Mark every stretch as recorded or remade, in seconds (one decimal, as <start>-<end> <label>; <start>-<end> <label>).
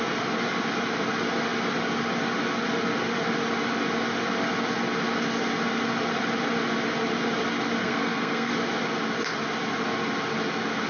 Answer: 0.0-7.8 recorded; 7.8-8.5 remade; 8.5-10.9 recorded